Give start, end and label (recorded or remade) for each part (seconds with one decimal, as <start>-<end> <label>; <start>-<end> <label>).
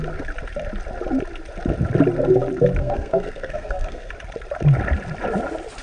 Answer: 0.0-2.8 recorded; 2.8-4.1 remade; 4.1-5.8 recorded